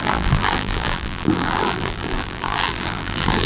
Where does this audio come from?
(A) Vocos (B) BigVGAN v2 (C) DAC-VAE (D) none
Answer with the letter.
B